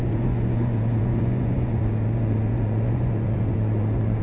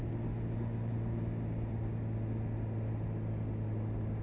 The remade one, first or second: first